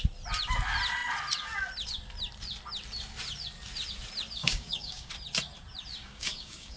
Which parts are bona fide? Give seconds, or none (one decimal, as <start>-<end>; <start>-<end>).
0.0-4.4; 5.1-6.0